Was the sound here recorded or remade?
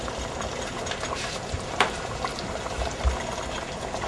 recorded